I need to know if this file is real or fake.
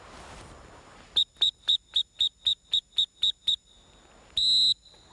real